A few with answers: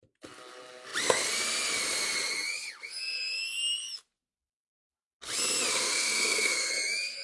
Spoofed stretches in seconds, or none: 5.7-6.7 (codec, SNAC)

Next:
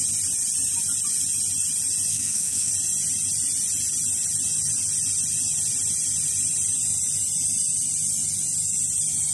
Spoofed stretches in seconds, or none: 2.1-2.7 (codec, SNAC)

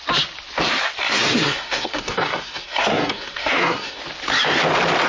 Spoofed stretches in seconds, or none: 1.0-4.0 (codec, SNAC)

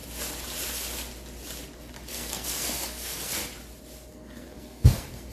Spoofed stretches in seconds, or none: 2.1-3.4 (codec, SNAC); 4.1-5.3

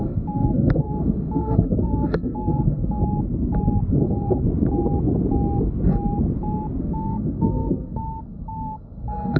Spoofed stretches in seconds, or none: 0.0-3.0 (codec, SNAC); 3.9-4.4; 6.8-9.4

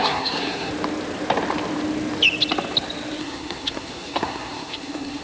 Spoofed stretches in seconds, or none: 0.0-0.7 (codec, SNAC); 3.2-5.2

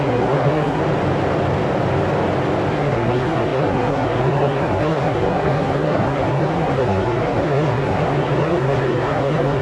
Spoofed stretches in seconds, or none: 0.0-0.8 (codec, SNAC); 2.7-9.6

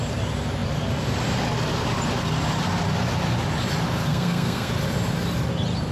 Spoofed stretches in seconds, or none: 4.1-4.7 (codec, SNAC)